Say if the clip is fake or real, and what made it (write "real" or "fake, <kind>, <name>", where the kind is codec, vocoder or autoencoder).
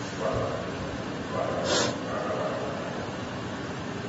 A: real